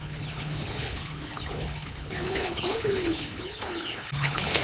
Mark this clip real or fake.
fake